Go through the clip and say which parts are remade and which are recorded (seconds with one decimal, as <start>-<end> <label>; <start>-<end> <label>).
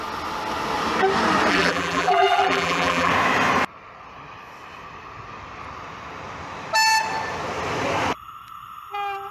0.0-1.5 recorded; 1.5-3.1 remade; 3.1-9.3 recorded